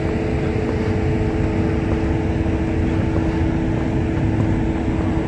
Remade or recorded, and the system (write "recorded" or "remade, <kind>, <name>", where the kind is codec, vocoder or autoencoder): recorded